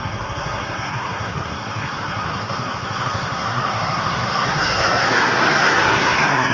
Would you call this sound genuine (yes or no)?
no